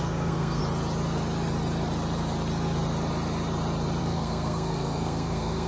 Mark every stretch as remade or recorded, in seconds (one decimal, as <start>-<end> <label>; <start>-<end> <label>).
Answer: 0.0-0.6 remade; 0.6-4.0 recorded; 4.0-5.7 remade